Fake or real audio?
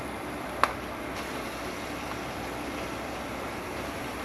real